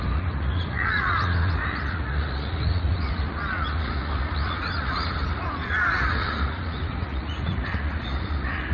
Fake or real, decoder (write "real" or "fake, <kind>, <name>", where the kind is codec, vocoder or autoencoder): fake, vocoder, Vocos